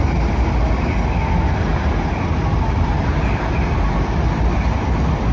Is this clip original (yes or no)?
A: yes